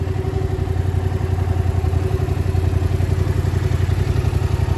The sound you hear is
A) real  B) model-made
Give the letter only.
A